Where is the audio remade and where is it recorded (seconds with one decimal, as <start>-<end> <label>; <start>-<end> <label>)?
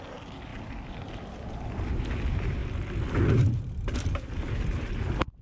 0.0-0.5 recorded; 0.5-1.5 remade; 1.5-2.6 recorded; 2.6-4.1 remade; 4.1-5.4 recorded